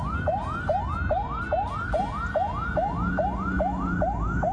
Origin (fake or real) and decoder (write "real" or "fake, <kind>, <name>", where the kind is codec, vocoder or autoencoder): real